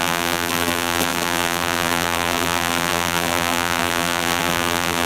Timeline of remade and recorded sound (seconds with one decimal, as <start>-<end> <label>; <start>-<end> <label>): 0.0-5.1 remade